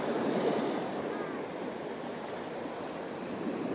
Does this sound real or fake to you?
real